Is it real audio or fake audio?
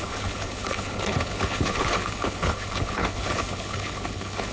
fake